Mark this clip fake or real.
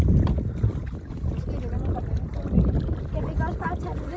real